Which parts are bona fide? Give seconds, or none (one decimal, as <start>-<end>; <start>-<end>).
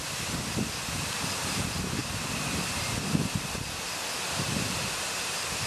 0.0-5.7